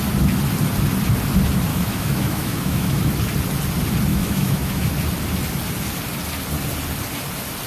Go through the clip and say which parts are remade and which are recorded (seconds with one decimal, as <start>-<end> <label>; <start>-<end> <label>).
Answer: 0.0-1.7 recorded; 1.7-3.1 remade; 3.1-4.1 recorded; 4.1-4.9 remade; 4.9-7.7 recorded